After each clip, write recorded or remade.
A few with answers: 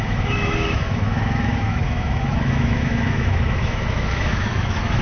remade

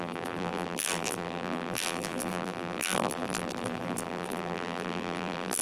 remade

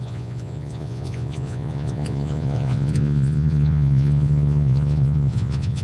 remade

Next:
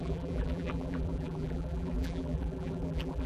remade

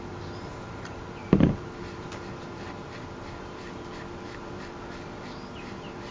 remade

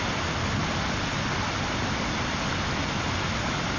recorded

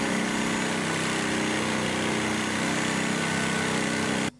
recorded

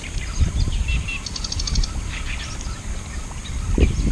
recorded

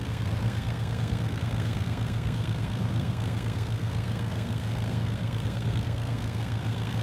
remade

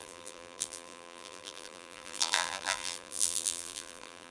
remade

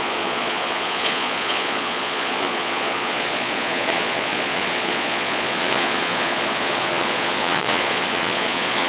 remade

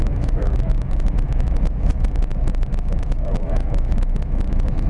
remade